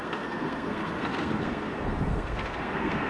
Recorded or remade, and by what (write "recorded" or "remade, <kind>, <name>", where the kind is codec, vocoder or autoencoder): remade, codec, SNAC